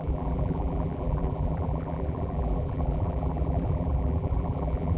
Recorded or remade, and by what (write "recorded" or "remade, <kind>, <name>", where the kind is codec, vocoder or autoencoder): remade, vocoder, BigVGAN v2